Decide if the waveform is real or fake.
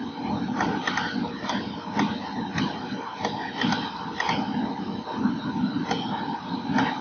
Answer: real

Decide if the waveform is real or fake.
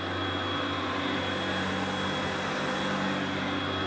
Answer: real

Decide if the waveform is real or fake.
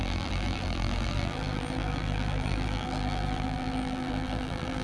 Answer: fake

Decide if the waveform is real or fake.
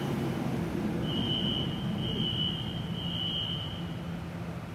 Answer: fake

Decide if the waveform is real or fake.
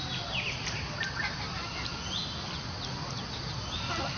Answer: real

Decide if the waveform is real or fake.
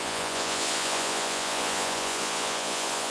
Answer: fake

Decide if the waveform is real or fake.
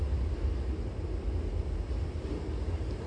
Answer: real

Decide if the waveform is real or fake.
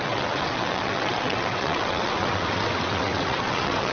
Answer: fake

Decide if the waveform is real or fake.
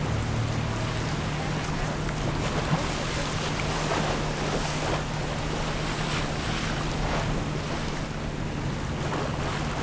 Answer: real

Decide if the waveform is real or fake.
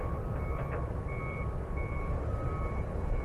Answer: real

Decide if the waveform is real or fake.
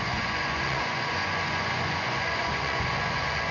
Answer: fake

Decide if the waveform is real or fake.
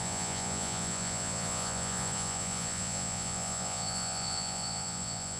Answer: fake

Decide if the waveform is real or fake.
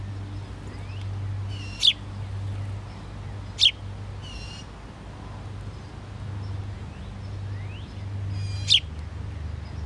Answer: real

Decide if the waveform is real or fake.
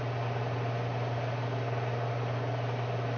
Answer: real